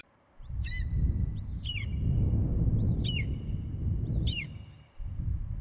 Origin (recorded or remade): remade